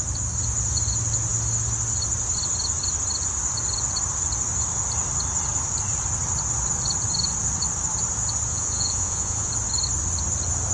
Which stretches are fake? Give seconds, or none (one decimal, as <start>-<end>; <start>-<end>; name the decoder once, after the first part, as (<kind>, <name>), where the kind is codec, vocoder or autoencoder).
8.5-9.5 (vocoder, Vocos)